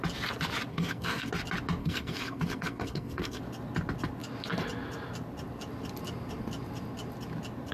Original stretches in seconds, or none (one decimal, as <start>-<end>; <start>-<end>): 0.0-0.7; 1.3-1.8; 3.4-7.7